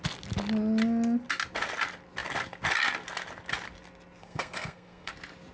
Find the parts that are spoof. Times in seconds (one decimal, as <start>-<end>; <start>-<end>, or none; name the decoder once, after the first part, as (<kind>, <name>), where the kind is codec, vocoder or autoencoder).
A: 4.2-5.1 (codec, SNAC)